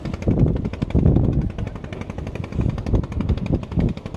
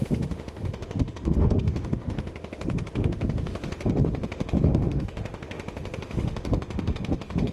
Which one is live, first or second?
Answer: first